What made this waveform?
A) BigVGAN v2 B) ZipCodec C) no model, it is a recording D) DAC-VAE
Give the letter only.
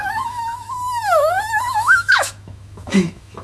D